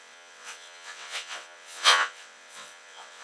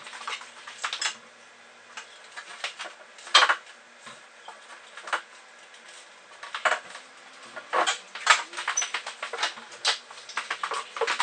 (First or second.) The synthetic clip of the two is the first